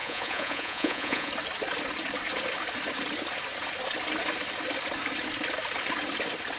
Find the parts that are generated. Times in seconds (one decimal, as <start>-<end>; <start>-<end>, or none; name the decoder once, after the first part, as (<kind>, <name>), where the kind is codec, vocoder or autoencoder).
0.0-1.3 (vocoder, Vocos)